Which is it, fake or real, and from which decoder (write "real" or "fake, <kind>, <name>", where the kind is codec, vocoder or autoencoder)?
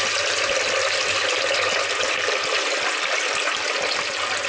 real